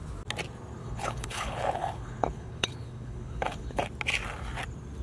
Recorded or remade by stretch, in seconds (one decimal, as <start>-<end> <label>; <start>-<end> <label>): 0.0-0.8 recorded; 0.8-3.8 remade; 3.8-5.0 recorded